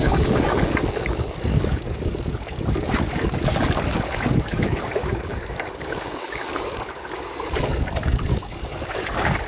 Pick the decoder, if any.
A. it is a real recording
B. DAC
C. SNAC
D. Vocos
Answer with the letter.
B